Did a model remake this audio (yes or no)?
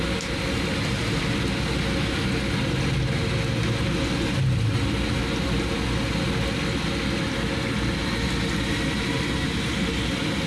no